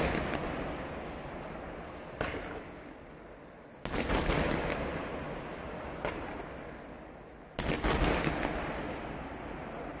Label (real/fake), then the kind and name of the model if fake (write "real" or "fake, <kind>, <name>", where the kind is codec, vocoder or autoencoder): real